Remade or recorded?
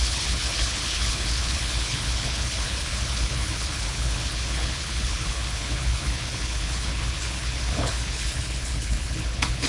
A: remade